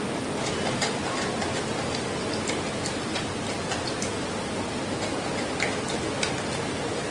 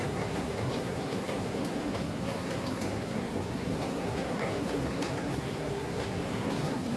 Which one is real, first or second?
first